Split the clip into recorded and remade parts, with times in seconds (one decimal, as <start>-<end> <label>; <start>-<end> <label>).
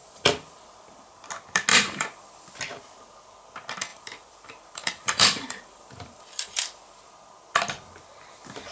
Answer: 0.0-0.7 remade; 0.7-1.7 recorded; 1.7-2.6 remade; 2.6-3.9 recorded; 3.9-7.1 remade; 7.1-8.7 recorded